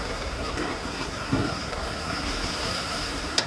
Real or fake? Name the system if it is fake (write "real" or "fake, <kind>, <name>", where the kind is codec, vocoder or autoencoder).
fake, codec, SNAC